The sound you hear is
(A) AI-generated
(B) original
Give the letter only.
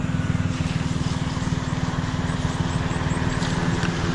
B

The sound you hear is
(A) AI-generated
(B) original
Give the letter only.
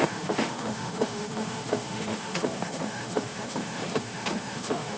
A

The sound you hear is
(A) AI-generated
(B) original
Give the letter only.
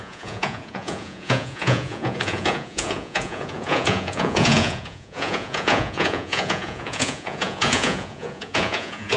A